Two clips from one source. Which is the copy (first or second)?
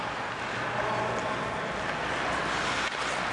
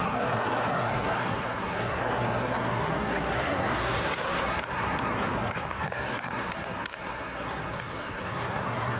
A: second